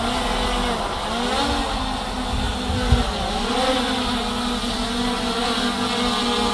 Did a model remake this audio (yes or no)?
no